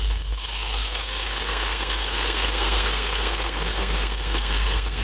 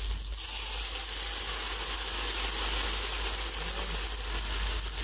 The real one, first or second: second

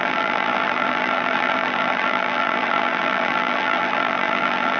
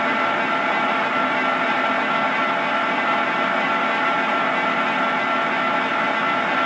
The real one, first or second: second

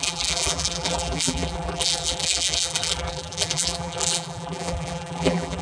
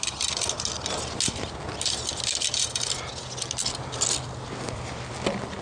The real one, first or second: second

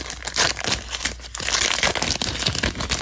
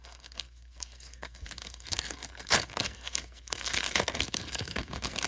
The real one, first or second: first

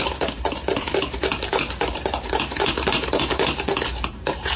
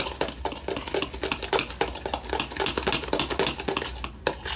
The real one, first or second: second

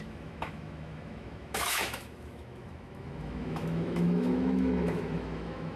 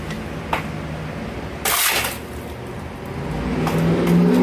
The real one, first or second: second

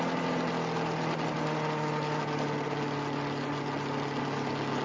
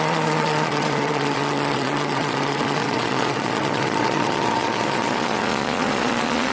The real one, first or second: first